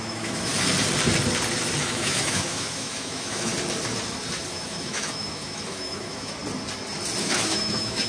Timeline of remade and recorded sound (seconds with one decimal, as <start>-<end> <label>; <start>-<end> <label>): 0.0-0.5 remade; 0.5-1.8 recorded; 1.8-3.5 remade; 3.5-4.5 recorded; 4.5-6.4 remade; 6.4-7.2 recorded; 7.2-8.1 remade

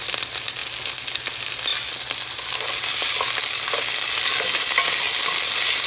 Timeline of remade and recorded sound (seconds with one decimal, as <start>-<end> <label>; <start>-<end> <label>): 0.0-5.9 recorded

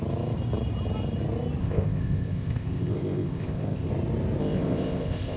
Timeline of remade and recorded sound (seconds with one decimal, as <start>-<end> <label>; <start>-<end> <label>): 0.0-1.6 recorded; 1.6-3.9 remade; 3.9-4.4 recorded; 4.4-5.4 remade